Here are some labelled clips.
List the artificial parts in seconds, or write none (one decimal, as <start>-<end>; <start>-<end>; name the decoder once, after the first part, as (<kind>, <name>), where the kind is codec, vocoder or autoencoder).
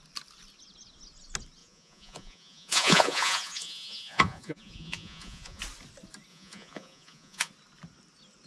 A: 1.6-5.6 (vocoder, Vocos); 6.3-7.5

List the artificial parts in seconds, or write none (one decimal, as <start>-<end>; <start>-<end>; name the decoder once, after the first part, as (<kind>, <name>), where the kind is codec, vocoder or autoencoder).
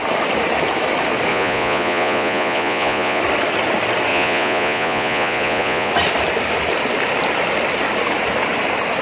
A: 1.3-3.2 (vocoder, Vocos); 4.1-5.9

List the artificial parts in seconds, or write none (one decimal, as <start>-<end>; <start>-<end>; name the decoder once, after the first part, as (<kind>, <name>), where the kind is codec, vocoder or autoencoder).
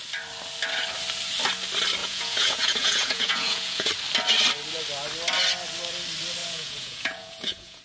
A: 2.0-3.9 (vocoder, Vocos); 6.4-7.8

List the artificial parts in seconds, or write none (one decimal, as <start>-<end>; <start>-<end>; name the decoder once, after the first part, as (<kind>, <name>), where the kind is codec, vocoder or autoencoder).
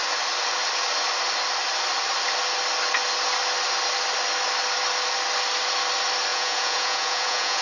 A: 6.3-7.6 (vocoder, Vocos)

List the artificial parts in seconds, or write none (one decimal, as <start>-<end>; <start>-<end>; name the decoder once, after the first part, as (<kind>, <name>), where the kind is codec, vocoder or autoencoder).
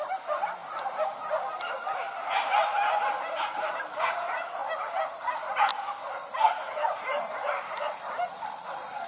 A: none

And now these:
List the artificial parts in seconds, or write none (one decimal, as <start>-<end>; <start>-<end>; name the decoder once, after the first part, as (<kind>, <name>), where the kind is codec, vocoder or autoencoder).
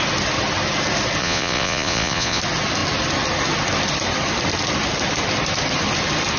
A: 1.2-2.4 (vocoder, Vocos)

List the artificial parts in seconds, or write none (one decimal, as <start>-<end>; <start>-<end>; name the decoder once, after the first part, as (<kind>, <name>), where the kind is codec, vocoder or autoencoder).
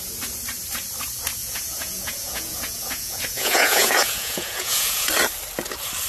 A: 1.4-5.1 (vocoder, Vocos)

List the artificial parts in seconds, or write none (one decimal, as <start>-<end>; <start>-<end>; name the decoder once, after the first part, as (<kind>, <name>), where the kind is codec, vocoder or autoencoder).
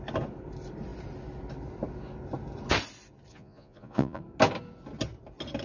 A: 3.3-4.2 (vocoder, Vocos)